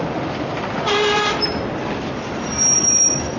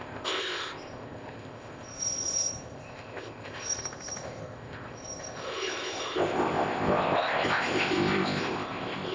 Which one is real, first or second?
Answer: first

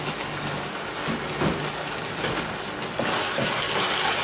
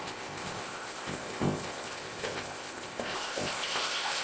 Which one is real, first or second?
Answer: first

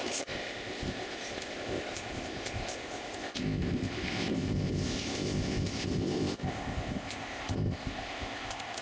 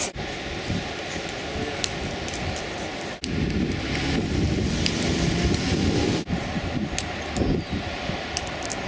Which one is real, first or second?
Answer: second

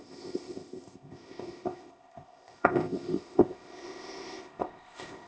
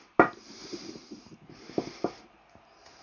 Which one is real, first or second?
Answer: second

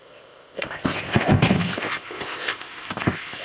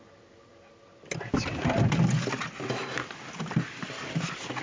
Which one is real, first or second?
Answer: second